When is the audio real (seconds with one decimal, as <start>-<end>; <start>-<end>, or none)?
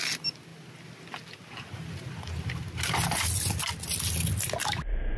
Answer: 0.0-5.2